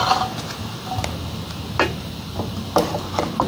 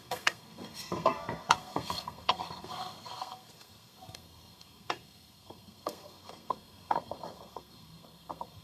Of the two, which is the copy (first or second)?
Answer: second